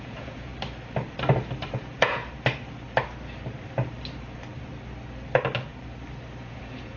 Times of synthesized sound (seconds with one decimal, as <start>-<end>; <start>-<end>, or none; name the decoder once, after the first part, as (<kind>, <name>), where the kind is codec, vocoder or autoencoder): 0.0-0.5 (vocoder, Vocos); 1.7-2.2; 6.4-7.0